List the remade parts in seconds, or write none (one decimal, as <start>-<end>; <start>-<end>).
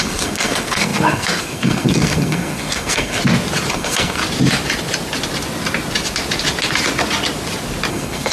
0.0-3.2; 3.7-4.2; 7.9-8.3